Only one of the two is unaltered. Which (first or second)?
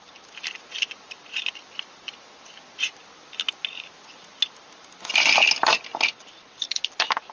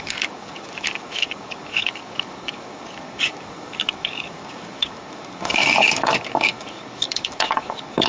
first